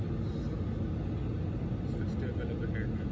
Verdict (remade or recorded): recorded